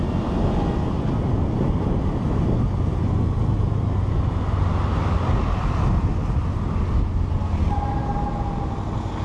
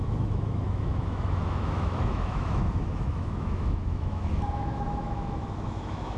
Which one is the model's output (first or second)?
second